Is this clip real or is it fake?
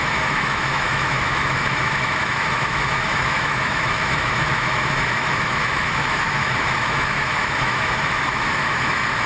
fake